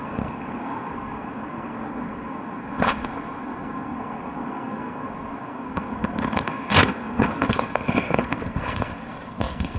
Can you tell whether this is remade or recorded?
remade